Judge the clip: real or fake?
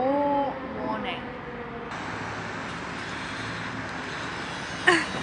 real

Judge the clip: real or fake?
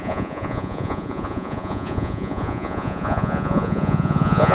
fake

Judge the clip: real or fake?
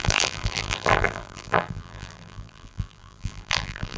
fake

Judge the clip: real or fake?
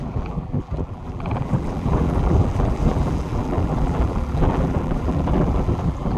fake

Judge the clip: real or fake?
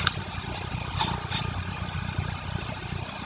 real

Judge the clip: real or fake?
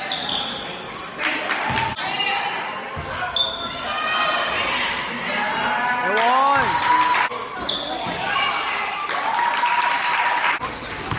real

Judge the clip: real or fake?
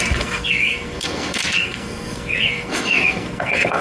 fake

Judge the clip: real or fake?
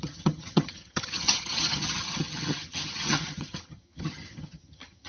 fake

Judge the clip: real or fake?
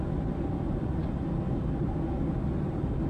real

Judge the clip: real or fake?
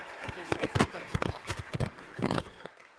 fake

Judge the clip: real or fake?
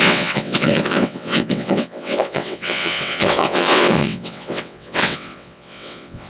fake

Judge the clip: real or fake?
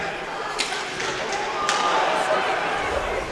real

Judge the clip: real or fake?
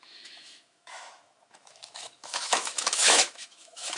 fake